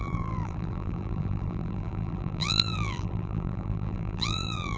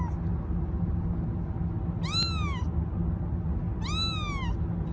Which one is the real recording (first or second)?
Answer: second